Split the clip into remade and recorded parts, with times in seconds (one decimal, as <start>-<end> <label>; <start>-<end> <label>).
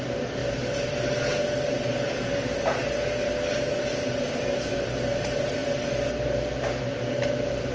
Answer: 0.0-7.7 recorded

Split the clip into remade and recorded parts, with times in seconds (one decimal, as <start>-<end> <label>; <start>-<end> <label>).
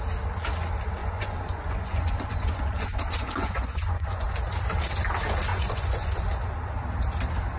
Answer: 0.0-1.0 recorded; 1.0-4.3 remade; 4.3-5.5 recorded; 5.5-6.2 remade; 6.2-7.6 recorded